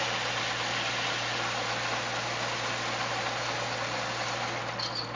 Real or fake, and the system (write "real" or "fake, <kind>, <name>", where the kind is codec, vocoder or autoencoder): real